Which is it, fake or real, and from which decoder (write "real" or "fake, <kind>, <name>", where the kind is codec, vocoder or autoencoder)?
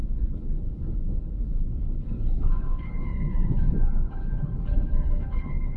fake, codec, HILCodec